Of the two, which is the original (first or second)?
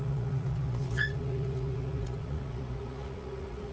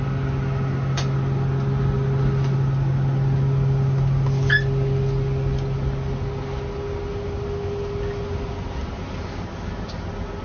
second